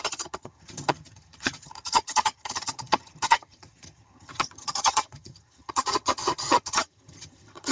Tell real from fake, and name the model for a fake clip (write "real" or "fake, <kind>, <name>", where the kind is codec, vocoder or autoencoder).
fake, vocoder, HiFi-GAN